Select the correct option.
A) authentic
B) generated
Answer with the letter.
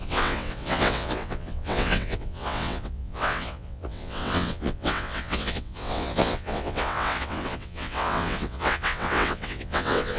B